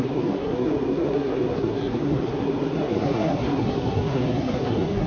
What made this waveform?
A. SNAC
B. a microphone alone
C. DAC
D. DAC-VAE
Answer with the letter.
A